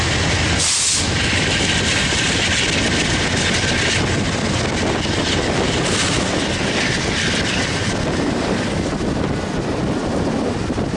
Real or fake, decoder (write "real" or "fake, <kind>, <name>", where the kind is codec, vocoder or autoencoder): real